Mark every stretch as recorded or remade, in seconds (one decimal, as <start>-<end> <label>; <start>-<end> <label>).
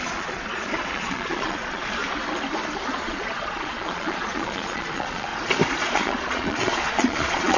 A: 0.0-2.0 remade; 2.0-2.9 recorded; 2.9-5.3 remade; 5.3-5.8 recorded; 5.8-7.6 remade